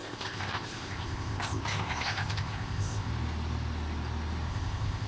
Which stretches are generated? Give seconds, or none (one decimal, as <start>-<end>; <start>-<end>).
0.0-3.1; 4.5-5.1